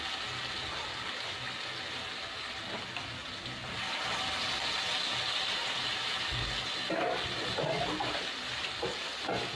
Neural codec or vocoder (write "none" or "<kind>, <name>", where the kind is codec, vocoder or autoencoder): none